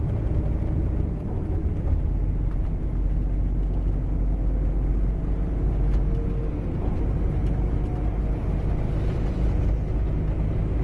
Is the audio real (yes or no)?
yes